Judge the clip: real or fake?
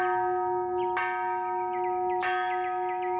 real